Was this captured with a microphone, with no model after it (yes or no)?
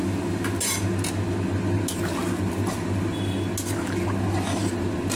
yes